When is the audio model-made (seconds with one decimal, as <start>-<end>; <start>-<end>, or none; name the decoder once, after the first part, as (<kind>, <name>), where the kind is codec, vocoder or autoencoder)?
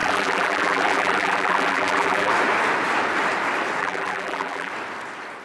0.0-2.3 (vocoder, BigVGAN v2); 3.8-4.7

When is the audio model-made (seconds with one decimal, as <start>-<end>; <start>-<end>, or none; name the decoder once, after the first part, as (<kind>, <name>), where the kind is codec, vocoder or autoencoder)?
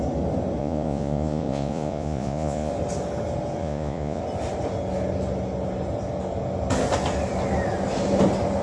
0.6-2.7 (vocoder, Vocos); 3.6-4.2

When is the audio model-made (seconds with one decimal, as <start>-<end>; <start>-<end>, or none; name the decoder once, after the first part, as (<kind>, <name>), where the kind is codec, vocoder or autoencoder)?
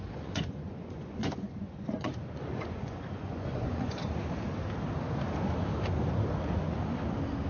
0.0-4.0 (vocoder, Vocos)